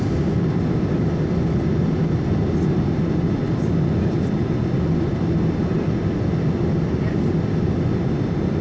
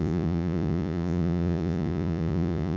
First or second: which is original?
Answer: first